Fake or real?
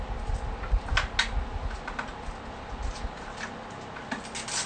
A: real